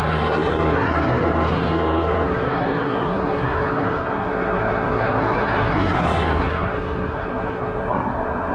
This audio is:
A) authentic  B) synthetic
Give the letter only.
B